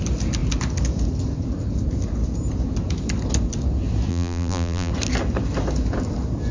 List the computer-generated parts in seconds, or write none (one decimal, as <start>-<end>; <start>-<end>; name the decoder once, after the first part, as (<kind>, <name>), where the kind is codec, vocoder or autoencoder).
4.1-4.9 (vocoder, BigVGAN v2)